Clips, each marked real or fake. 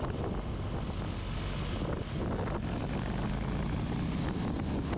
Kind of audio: real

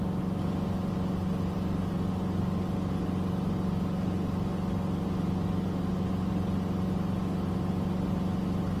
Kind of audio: real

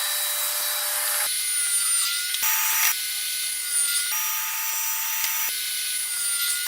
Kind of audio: real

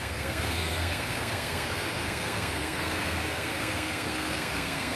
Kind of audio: fake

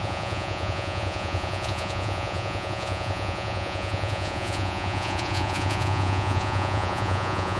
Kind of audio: fake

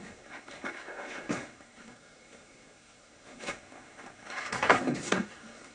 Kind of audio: fake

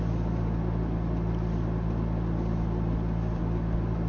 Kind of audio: real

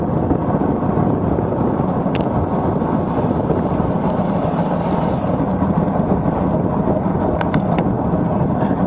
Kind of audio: real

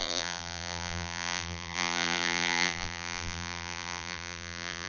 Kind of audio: fake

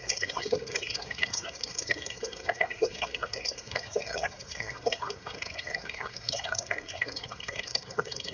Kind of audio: fake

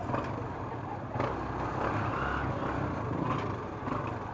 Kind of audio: real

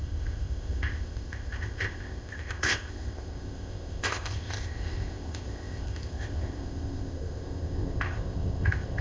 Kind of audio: fake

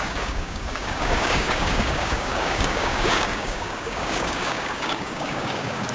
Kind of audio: fake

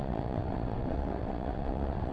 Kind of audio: fake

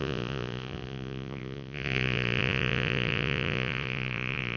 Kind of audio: fake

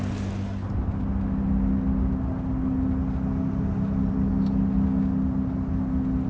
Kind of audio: real